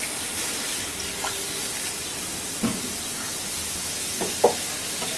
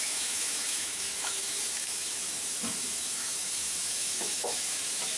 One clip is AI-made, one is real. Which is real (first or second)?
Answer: first